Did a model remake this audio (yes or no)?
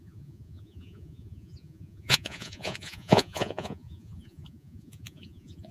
yes